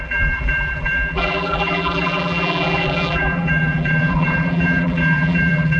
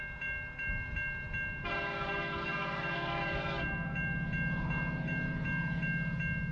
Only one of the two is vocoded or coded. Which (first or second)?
first